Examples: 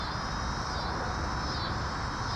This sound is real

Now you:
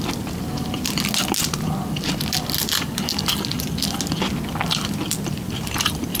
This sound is real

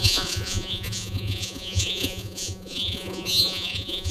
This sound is fake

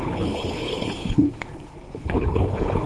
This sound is fake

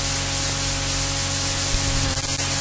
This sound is real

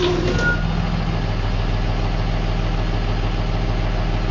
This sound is real